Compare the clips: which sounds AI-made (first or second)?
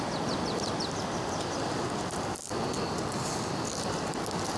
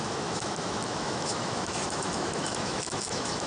second